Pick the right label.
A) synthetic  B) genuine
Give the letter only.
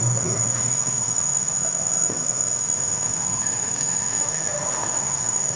A